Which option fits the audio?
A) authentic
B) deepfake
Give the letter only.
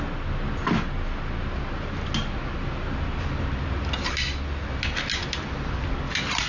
A